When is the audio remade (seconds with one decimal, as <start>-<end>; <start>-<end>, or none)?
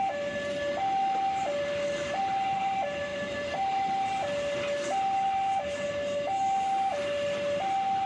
none